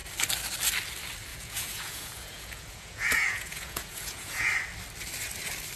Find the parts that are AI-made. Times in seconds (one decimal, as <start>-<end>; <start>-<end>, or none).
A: 1.3-4.5